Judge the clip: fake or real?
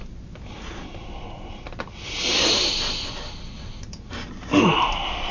real